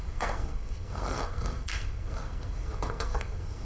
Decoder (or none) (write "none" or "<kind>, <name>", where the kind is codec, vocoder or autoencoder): codec, SNAC